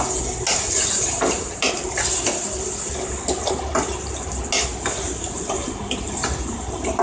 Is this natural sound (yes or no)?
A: yes